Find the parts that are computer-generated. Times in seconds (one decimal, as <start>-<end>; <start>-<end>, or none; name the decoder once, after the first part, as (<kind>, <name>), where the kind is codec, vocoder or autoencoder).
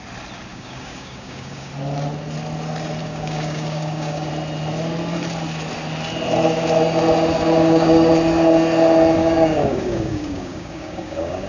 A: 0.5-1.7 (codec, DAC); 3.0-4.3; 7.6-8.1; 9.2-11.5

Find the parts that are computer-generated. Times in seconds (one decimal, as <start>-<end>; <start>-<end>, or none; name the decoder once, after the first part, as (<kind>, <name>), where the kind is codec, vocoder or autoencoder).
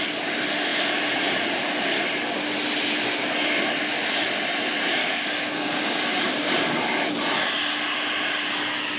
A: 5.0-7.1 (codec, DAC)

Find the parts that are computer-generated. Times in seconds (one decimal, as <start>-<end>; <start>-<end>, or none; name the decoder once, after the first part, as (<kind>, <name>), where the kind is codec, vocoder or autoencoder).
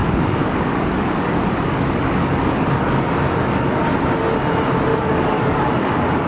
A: 0.0-3.8 (codec, DAC); 4.9-6.3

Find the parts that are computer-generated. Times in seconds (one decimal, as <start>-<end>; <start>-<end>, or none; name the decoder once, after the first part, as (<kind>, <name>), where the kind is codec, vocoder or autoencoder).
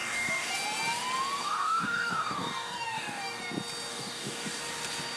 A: 0.0-0.5 (codec, DAC); 1.4-3.4; 3.9-4.6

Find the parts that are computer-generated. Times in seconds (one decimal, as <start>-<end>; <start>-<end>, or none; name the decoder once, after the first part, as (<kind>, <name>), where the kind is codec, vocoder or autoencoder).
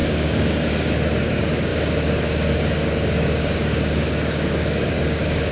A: 0.0-5.5 (codec, DAC)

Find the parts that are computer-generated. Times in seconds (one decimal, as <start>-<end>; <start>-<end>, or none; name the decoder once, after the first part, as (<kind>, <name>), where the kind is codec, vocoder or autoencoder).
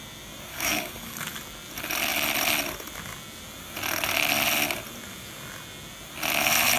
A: 0.5-1.2 (codec, DAC)